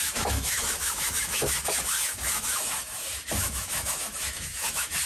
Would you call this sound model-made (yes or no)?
yes